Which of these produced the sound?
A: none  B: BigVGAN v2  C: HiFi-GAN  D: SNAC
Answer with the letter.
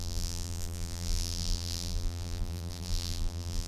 B